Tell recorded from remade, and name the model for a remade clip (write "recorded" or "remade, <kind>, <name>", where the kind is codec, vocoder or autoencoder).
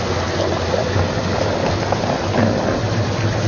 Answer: recorded